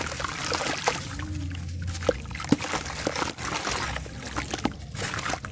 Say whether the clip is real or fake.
real